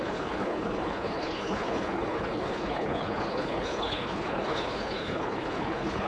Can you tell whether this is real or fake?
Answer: fake